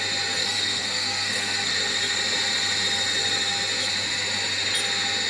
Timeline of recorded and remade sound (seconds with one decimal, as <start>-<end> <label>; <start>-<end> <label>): 0.0-0.4 recorded; 0.4-1.7 remade; 1.7-5.3 recorded